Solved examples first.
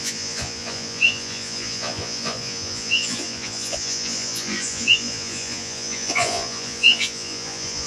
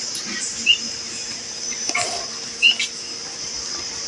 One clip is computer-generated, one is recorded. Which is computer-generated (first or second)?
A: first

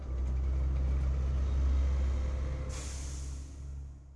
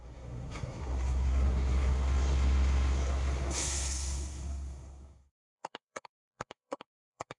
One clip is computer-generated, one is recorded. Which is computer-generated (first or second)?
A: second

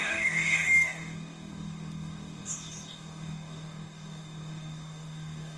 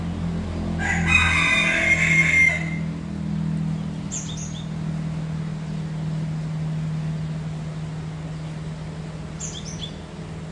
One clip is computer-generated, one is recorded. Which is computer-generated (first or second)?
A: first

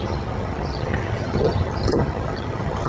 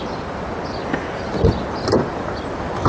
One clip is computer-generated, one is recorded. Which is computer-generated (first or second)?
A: first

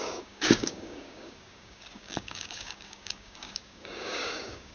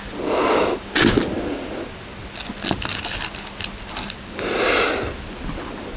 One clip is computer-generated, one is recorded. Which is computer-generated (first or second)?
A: first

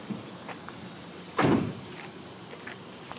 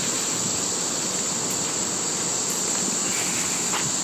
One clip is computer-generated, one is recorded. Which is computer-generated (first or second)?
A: first